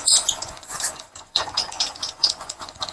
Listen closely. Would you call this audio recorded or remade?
remade